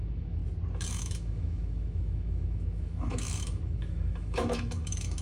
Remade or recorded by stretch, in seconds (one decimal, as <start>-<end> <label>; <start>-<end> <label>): 0.0-0.4 remade; 0.4-0.9 recorded; 0.9-5.2 remade